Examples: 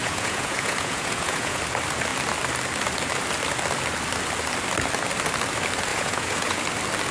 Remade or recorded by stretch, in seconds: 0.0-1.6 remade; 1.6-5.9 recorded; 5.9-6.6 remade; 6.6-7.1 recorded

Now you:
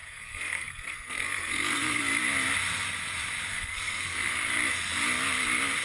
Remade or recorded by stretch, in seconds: 0.0-2.0 remade; 2.0-3.5 recorded; 3.5-4.3 remade; 4.3-5.8 recorded